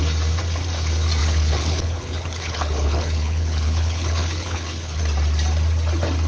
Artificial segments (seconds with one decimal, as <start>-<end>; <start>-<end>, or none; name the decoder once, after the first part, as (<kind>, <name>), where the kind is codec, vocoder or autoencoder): 1.2-5.0 (codec, HILCodec)